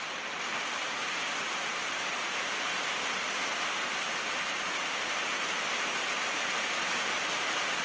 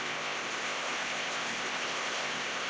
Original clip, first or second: first